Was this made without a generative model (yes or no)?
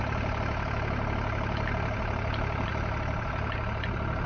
yes